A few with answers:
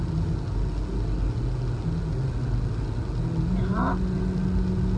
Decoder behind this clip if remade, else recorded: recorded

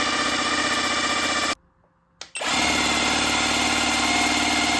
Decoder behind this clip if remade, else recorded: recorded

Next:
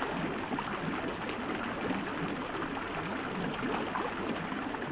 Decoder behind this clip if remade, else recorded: recorded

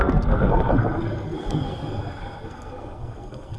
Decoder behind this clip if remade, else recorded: remade, codec, SNAC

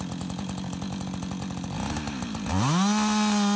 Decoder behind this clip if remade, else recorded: recorded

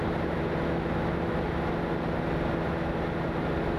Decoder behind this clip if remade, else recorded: recorded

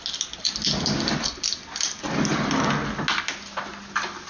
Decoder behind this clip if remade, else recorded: recorded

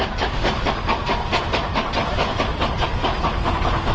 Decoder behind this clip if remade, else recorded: recorded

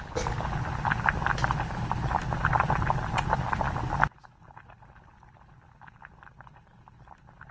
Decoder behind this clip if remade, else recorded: recorded